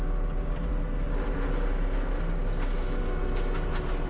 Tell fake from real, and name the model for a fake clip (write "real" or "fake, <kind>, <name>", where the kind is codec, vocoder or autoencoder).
real